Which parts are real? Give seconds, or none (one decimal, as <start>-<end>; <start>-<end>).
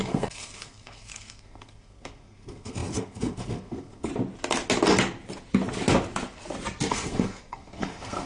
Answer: 4.1-6.9